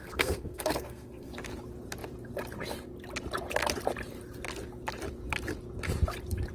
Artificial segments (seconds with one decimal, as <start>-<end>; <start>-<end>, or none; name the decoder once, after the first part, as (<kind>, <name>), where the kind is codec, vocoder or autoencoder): 0.0-1.3 (codec, SNAC)